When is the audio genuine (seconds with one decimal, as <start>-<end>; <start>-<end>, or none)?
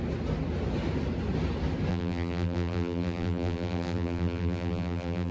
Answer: 0.0-1.9